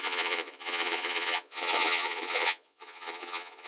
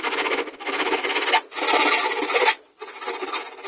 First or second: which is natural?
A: second